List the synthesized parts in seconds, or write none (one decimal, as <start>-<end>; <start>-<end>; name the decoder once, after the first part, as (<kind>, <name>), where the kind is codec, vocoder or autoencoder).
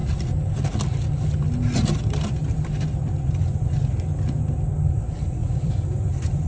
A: 5.4-6.5 (vocoder, BigVGAN v2)